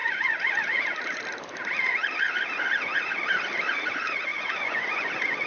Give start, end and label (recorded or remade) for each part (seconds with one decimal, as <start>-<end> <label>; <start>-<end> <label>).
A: 0.0-1.2 remade; 1.2-4.3 recorded; 4.3-5.1 remade; 5.1-5.5 recorded